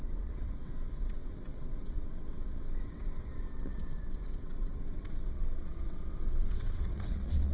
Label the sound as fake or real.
fake